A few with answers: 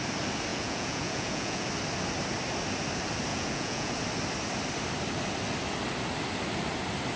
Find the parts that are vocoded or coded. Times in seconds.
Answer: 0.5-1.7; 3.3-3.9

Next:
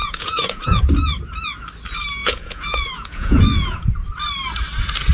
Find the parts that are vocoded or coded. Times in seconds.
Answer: 0.0-0.8; 2.2-3.9

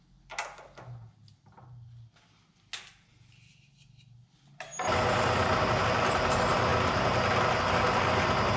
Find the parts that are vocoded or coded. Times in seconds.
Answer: none

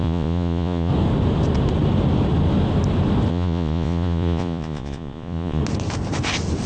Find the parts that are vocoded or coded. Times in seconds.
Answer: 0.0-0.9; 3.3-5.6